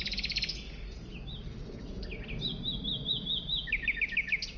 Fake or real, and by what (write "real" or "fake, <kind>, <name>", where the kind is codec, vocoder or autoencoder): real